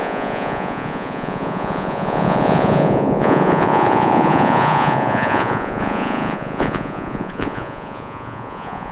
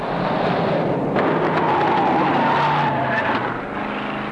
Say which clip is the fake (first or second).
first